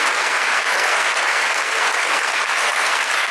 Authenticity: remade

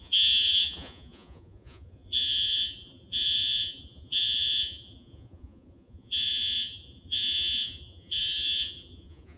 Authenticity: remade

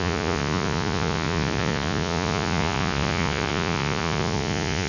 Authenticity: remade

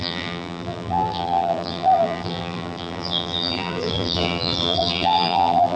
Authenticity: remade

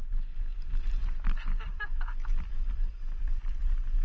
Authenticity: remade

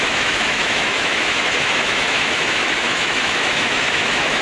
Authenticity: remade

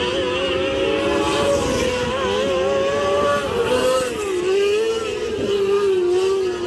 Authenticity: recorded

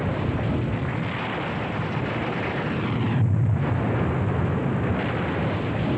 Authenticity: recorded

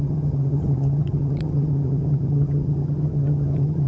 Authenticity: remade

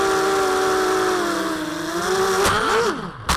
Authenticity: recorded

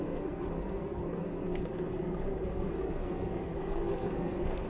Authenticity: remade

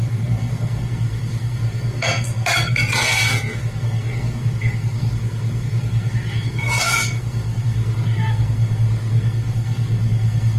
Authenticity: remade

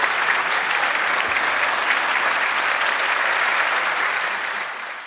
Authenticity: recorded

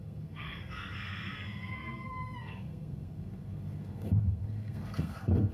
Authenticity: remade